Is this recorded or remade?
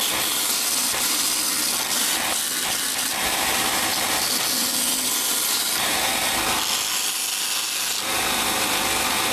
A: recorded